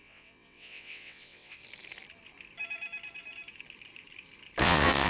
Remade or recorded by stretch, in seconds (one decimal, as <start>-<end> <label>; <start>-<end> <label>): 0.0-1.6 remade; 1.6-4.6 recorded; 4.6-5.1 remade

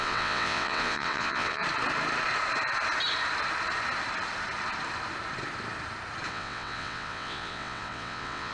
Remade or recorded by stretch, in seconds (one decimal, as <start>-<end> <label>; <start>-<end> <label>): 0.0-1.6 remade; 1.6-6.3 recorded; 6.3-8.5 remade

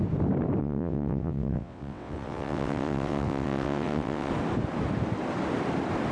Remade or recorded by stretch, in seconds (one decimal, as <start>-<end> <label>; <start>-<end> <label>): 0.0-0.6 recorded; 0.6-4.3 remade; 4.3-6.1 recorded

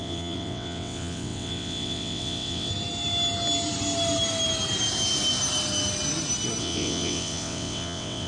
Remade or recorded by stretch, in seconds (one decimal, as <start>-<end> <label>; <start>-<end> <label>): 0.0-2.7 remade; 2.7-6.6 recorded; 6.6-8.3 remade

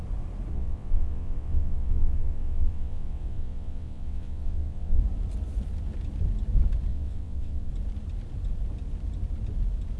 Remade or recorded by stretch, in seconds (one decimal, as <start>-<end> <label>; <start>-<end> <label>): 0.0-0.5 recorded; 0.5-5.0 remade; 5.0-6.9 recorded; 6.9-7.7 remade; 7.7-10.0 recorded